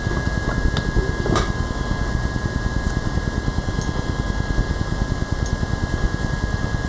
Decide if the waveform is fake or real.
real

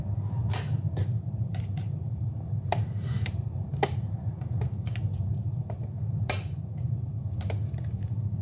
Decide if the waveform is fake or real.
fake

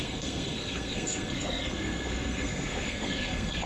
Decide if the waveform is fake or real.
fake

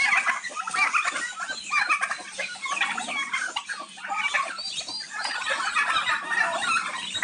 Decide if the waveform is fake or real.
real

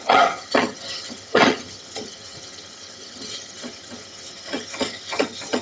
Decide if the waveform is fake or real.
fake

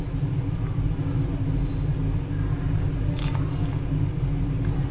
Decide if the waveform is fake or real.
real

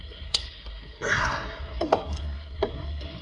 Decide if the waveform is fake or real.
fake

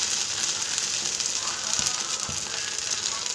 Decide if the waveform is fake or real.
real